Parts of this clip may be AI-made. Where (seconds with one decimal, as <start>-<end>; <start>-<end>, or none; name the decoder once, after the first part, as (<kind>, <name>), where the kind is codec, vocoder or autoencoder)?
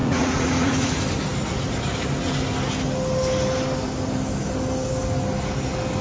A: 0.0-0.9 (vocoder, Vocos)